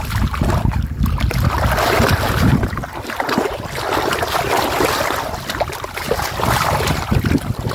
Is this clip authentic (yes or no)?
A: yes